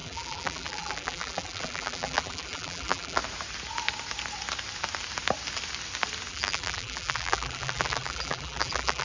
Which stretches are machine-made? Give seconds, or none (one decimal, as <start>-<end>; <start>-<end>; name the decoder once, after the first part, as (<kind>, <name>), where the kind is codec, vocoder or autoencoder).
0.0-3.2 (vocoder, BigVGAN v2); 6.3-9.0